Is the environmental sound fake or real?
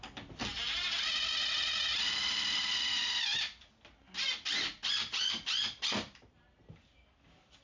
real